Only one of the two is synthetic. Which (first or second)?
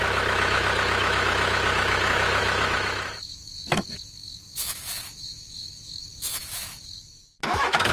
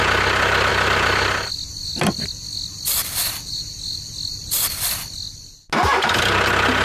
first